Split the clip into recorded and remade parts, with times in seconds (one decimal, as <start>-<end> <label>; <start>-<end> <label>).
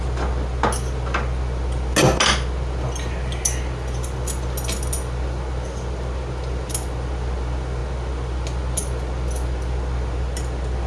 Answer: 0.0-10.9 recorded